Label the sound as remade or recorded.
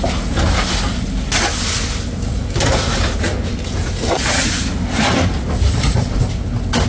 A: recorded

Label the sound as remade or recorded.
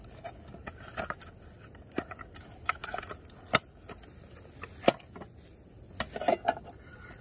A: recorded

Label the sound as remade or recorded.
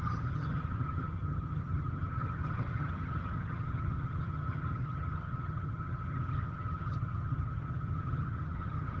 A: remade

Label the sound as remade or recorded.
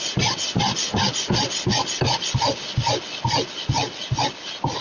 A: recorded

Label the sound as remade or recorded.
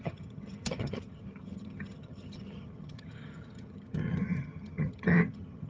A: remade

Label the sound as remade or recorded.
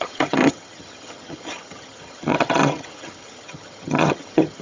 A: remade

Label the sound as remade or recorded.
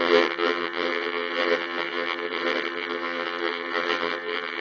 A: remade